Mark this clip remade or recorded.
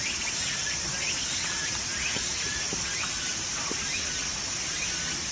recorded